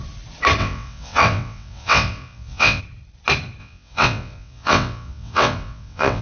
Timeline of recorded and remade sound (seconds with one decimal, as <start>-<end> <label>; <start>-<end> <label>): 0.0-0.6 recorded; 0.6-2.8 remade; 2.8-3.6 recorded; 3.6-6.2 remade